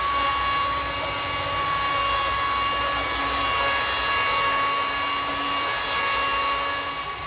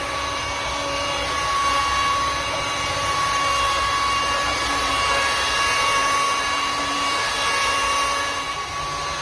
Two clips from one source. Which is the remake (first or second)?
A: second